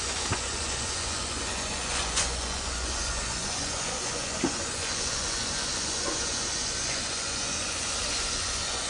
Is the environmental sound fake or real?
fake